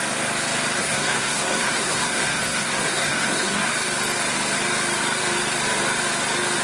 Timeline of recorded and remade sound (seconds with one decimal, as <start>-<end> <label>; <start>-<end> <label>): 0.0-0.8 recorded; 0.8-3.7 remade; 3.7-6.6 recorded